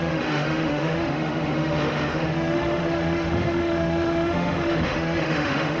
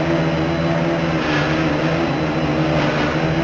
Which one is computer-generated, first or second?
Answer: first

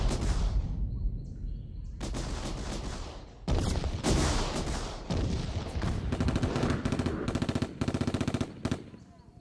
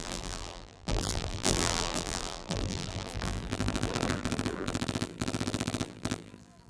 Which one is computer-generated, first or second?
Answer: second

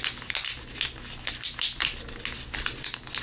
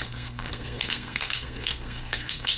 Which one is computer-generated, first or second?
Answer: second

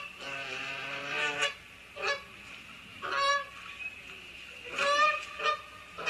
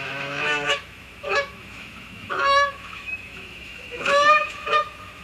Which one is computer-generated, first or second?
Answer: second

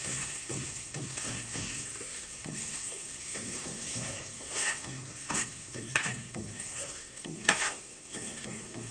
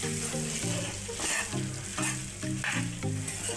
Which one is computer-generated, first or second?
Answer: first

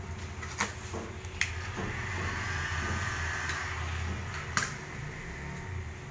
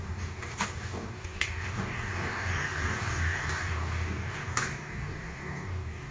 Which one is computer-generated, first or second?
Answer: second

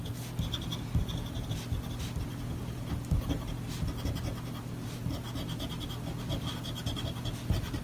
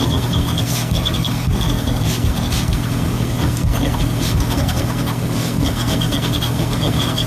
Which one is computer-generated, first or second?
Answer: second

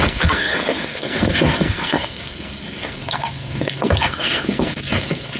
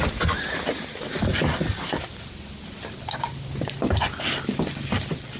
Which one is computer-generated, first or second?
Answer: first